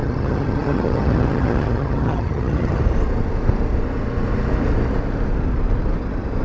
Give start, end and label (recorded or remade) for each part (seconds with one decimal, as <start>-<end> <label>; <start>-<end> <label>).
0.0-2.8 remade; 2.8-6.4 recorded